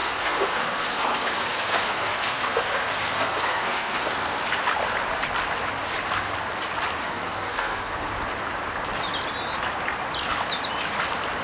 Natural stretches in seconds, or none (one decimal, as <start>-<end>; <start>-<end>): 4.4-7.0; 8.1-11.4